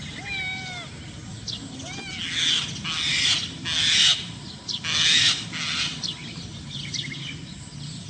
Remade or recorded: recorded